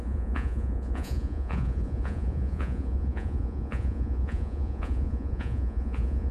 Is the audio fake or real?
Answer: fake